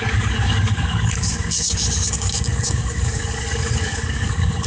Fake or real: fake